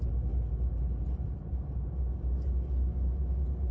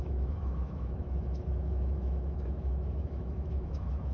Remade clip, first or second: second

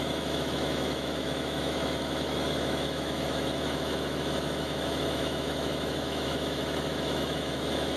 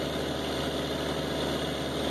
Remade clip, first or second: first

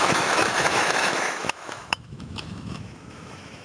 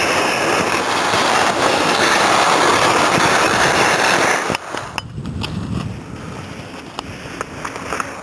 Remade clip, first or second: first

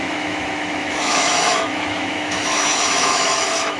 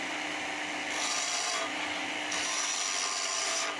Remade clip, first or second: first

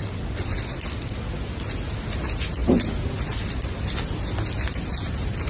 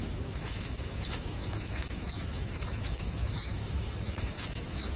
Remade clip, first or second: second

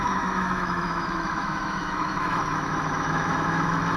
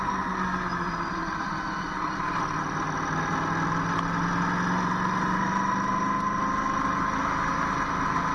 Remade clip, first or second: first